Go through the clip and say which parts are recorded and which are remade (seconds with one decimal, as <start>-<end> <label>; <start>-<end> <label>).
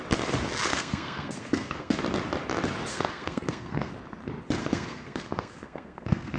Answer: 0.0-0.7 recorded; 0.7-2.0 remade; 2.0-2.9 recorded; 2.9-3.9 remade; 3.9-4.6 recorded; 4.6-6.4 remade